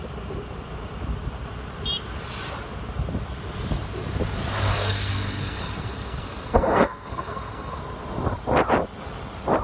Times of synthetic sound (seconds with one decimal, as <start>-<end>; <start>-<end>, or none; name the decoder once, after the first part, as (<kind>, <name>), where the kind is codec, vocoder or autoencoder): 4.7-7.8 (codec, SNAC)